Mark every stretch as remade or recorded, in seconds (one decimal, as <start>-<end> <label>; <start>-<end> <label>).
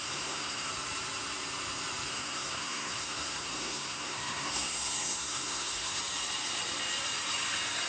0.0-0.7 remade; 0.7-2.1 recorded; 2.1-6.0 remade; 6.0-7.9 recorded